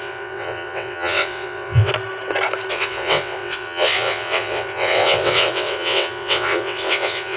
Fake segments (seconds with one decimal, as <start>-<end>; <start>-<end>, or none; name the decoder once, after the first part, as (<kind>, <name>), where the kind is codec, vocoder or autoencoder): 0.0-1.9 (vocoder, WaveNeXt); 2.7-7.4